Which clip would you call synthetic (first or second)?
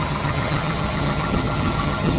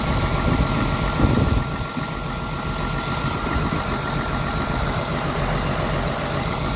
first